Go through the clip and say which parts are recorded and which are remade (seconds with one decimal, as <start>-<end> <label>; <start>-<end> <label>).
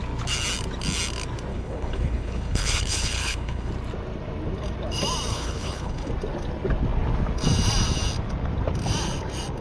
0.0-1.5 recorded; 1.5-3.7 remade; 3.7-5.3 recorded; 5.3-6.1 remade; 6.1-9.6 recorded